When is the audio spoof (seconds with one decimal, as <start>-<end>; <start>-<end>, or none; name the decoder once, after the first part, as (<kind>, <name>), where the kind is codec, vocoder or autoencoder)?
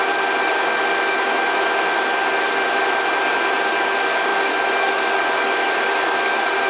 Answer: 4.3-6.7 (autoencoder, DAC-VAE)